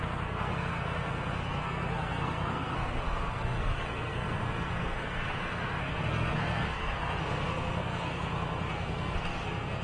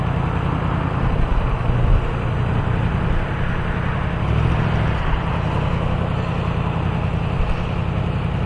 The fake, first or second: first